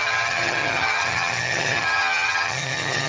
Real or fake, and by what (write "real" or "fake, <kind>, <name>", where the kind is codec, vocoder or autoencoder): fake, vocoder, HiFi-GAN